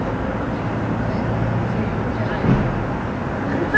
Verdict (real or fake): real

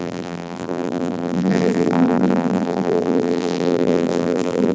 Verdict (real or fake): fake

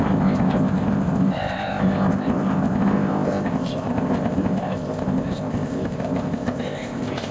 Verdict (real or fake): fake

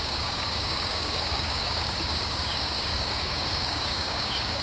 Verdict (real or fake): fake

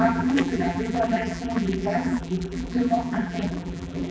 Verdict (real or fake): fake